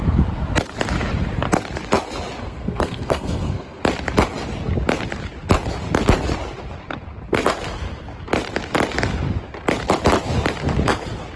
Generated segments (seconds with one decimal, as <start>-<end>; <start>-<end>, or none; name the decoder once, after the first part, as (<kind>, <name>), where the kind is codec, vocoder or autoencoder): 2.4-3.8 (codec, SNAC)